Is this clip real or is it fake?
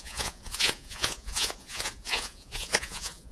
fake